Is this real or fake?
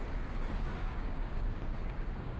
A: fake